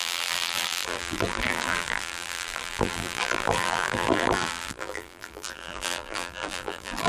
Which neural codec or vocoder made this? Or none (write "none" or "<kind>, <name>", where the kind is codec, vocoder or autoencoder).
vocoder, BigVGAN v2